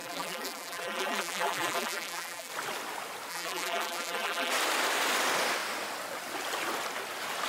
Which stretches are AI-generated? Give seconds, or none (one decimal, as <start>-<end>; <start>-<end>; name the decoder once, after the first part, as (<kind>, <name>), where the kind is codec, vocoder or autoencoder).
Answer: 0.0-2.5 (vocoder, BigVGAN v2); 3.3-4.5